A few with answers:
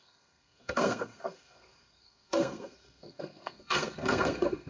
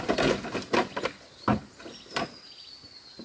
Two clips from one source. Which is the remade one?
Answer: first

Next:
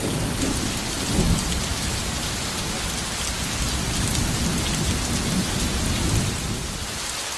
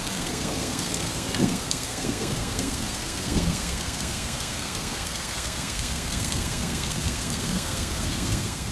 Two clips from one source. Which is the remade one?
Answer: second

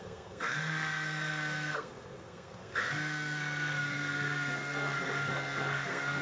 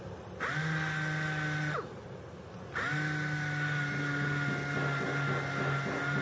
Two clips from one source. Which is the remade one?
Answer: first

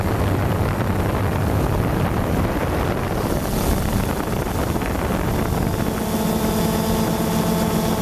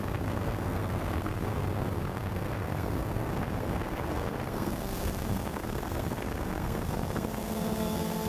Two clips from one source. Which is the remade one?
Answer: second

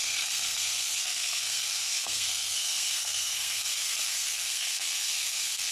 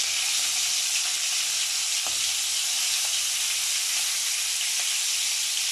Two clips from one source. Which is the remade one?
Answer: first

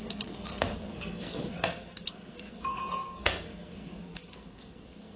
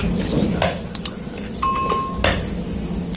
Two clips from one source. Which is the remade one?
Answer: first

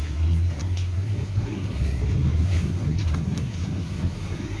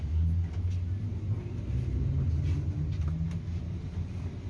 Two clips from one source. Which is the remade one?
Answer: first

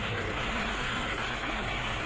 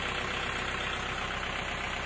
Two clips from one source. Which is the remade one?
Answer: first